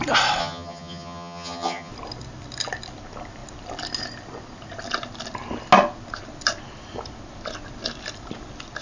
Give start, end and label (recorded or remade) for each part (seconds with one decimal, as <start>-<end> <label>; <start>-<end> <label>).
0.0-0.4 recorded; 0.4-1.9 remade; 1.9-8.8 recorded